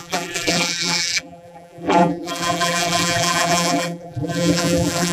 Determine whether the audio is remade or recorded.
remade